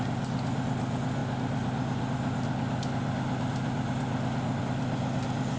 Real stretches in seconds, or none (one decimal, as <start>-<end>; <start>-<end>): 0.0-5.6